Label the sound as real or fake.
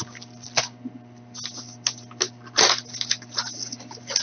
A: real